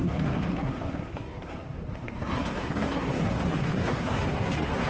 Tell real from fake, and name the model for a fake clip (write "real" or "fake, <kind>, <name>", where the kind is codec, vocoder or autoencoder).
fake, codec, SNAC